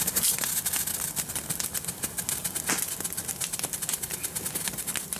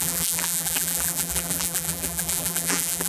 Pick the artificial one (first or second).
second